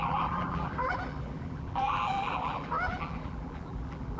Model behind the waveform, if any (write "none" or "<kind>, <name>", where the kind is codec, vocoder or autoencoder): vocoder, BigVGAN v2